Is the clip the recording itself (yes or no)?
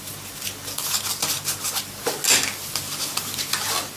yes